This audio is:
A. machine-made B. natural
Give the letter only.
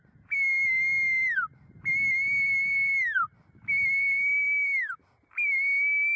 B